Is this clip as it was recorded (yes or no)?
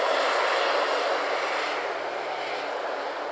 yes